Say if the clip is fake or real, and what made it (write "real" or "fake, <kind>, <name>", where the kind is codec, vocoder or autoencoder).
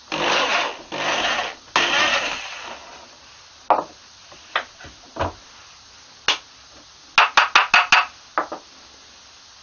real